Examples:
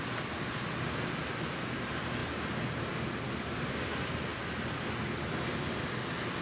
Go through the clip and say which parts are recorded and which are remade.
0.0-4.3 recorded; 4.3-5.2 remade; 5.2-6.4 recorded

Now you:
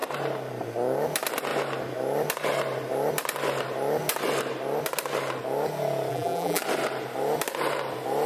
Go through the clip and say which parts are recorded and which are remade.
0.0-6.1 recorded; 6.1-6.6 remade; 6.6-8.3 recorded

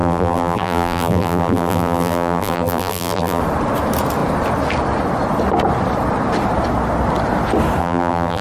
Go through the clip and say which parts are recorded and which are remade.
0.0-3.4 remade; 3.4-7.8 recorded; 7.8-8.4 remade

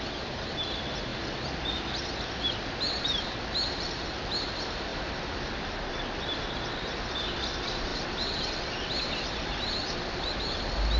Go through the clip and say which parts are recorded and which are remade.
0.0-1.1 recorded; 1.1-1.7 remade; 1.7-4.9 recorded; 4.9-5.9 remade; 5.9-7.9 recorded; 7.9-9.7 remade; 9.7-11.0 recorded